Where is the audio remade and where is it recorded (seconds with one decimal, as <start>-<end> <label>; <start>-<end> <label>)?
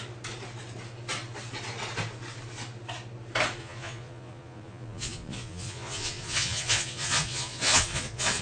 0.0-3.6 recorded; 3.6-8.4 remade